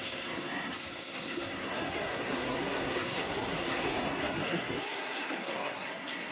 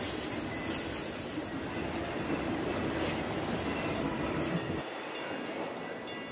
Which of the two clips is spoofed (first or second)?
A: first